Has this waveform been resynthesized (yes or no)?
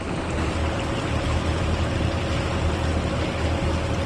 no